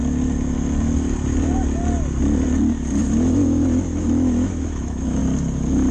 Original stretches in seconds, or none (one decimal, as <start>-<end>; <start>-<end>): 0.0-3.0; 5.2-5.9